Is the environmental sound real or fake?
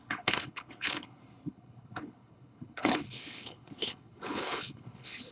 fake